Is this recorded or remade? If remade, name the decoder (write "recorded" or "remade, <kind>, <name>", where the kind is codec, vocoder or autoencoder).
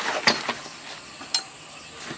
recorded